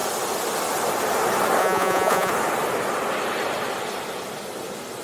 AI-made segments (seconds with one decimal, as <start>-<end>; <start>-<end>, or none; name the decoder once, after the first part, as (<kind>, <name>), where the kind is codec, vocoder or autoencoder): 1.6-2.3 (vocoder, Vocos)

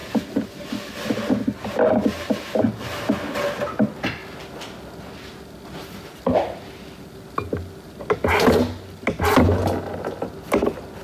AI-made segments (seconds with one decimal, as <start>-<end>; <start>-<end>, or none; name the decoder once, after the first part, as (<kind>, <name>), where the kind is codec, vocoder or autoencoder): none

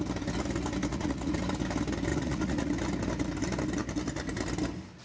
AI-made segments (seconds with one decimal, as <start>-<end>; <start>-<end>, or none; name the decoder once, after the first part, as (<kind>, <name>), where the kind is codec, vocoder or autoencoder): 0.9-1.4 (vocoder, Vocos); 2.1-2.7

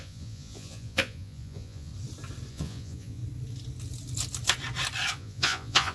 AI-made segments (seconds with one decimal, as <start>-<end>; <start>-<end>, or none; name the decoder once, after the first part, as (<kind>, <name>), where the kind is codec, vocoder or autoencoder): 0.0-1.9 (vocoder, Vocos); 2.5-3.2; 5.1-5.9

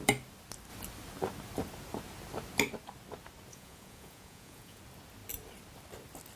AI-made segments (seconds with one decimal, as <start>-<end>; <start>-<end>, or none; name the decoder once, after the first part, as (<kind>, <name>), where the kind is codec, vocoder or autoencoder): 3.5-4.8 (vocoder, Vocos)

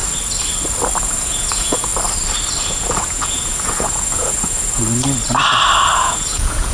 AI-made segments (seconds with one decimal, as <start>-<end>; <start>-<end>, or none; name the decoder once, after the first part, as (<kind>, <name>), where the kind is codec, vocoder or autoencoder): 1.0-1.9 (vocoder, Vocos); 2.7-4.8; 6.0-6.7

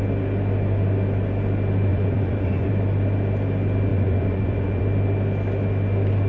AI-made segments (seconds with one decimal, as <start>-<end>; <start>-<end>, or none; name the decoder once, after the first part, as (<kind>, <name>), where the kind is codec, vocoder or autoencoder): 1.9-2.7 (vocoder, Vocos); 3.9-4.8